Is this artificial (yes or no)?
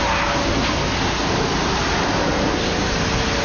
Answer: no